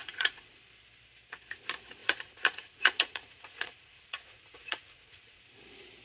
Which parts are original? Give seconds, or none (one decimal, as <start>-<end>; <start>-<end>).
0.6-2.0; 5.6-6.0